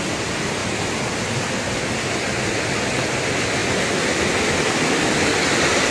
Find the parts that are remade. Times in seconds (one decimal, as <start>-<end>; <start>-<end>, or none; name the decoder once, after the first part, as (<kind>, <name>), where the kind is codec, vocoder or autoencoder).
none